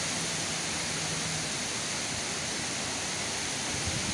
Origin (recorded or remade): recorded